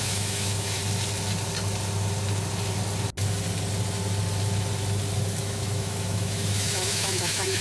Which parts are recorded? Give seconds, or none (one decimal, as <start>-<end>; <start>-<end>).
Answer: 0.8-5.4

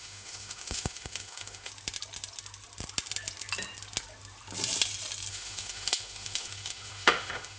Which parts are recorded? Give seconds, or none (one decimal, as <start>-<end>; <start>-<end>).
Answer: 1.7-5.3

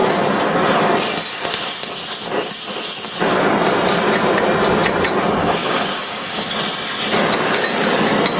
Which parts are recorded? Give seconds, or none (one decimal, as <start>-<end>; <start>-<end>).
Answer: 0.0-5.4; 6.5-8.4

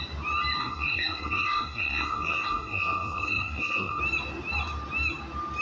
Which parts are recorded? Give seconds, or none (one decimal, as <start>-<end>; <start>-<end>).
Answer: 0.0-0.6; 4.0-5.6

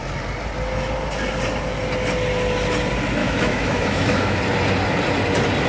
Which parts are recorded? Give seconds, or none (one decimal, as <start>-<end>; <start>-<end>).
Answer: 0.0-3.2; 4.4-5.7

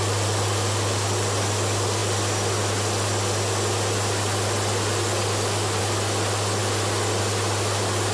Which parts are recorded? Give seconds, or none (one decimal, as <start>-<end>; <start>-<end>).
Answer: 0.0-8.1

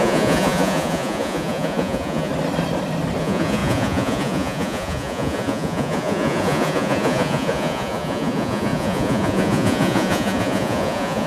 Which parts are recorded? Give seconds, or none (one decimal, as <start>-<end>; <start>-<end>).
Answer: 2.3-3.2

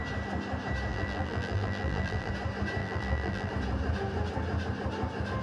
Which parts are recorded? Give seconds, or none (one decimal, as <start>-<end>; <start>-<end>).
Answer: 0.0-0.9; 2.3-2.8; 3.5-5.4